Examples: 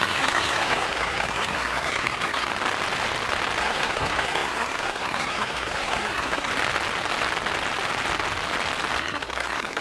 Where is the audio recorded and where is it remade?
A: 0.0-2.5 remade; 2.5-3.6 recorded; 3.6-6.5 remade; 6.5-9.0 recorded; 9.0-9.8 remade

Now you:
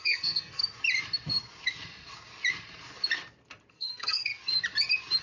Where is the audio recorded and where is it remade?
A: 0.0-0.6 remade; 0.6-3.7 recorded; 3.7-4.3 remade; 4.3-5.2 recorded

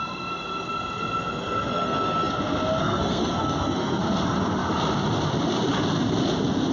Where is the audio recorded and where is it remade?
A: 0.0-1.7 recorded; 1.7-2.3 remade; 2.3-2.8 recorded; 2.8-4.0 remade; 4.0-6.7 recorded

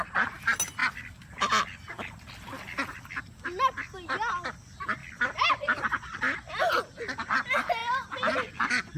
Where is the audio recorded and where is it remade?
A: 0.0-9.0 recorded